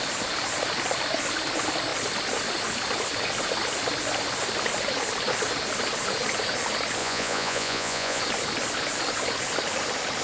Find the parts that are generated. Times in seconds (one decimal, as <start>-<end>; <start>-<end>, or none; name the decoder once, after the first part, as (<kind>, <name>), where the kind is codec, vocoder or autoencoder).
7.0-8.2 (vocoder, Vocos)